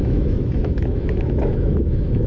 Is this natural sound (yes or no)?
no